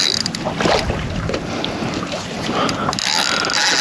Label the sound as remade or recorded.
recorded